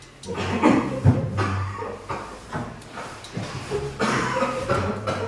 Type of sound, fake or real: fake